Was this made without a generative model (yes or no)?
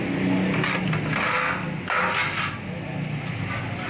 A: yes